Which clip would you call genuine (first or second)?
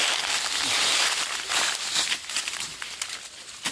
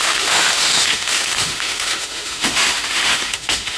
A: first